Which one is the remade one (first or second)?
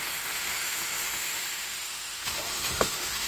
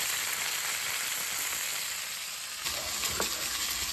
first